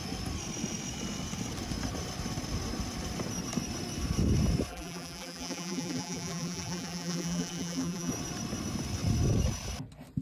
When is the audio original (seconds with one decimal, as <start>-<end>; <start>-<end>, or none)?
0.0-4.7; 8.1-10.2

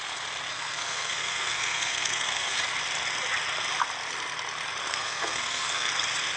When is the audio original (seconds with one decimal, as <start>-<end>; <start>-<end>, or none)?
0.0-0.5; 2.6-4.9; 5.9-6.4

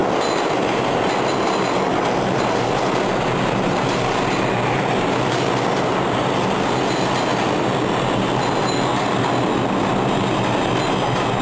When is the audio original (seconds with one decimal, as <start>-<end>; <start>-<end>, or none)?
0.0-11.4

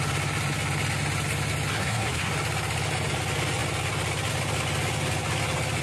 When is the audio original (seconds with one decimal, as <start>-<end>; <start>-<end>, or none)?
0.0-1.7; 2.3-5.8

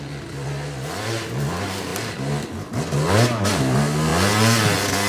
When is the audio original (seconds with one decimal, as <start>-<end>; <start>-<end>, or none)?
0.0-5.1

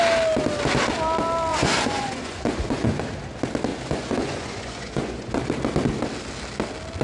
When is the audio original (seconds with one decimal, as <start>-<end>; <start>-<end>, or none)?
0.0-1.5; 3.0-3.7; 5.4-7.0